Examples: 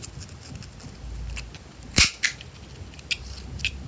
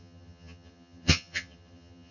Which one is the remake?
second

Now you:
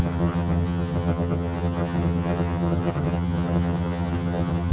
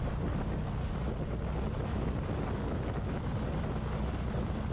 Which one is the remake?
first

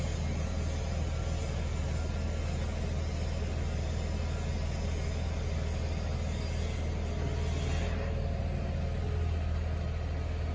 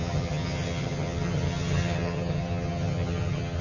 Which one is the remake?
second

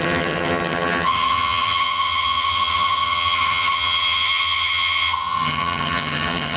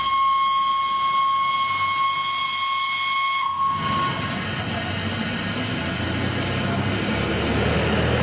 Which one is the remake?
first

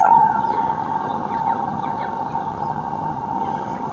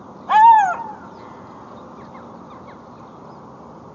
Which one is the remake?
first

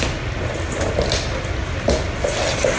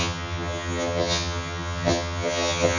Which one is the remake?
second